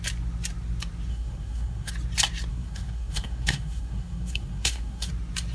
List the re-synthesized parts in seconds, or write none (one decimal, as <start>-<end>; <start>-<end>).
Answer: 1.1-1.9; 2.5-5.1